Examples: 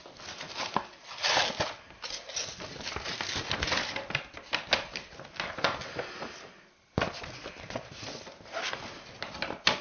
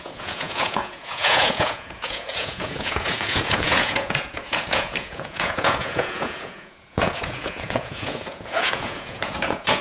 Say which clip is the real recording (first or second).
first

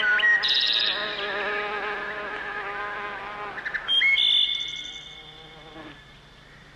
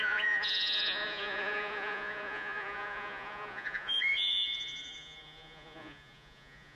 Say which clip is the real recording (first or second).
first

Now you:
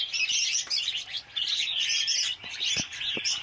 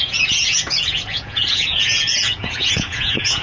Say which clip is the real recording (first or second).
first